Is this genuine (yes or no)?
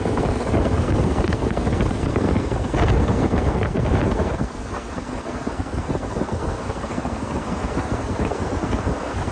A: no